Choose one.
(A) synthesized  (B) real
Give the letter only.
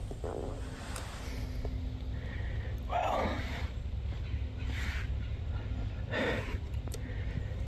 B